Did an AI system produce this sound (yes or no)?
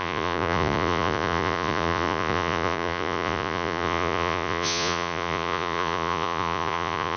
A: yes